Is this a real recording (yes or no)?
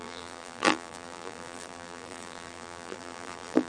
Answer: no